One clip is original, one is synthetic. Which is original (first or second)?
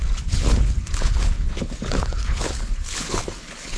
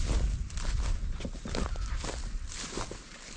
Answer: second